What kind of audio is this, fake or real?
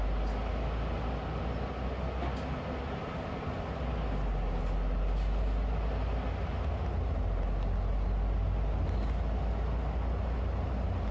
real